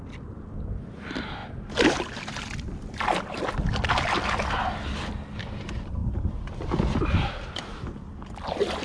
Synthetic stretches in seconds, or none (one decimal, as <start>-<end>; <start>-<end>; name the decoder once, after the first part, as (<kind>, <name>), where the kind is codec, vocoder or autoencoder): 1.4-3.4 (vocoder, BigVGAN v2); 6.0-8.8